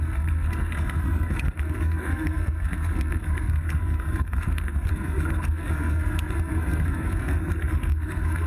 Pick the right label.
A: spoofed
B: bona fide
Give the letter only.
A